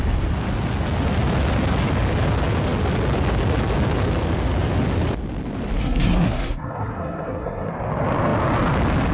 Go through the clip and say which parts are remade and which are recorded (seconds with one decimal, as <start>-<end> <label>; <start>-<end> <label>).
0.0-5.8 recorded; 5.8-7.7 remade; 7.7-9.1 recorded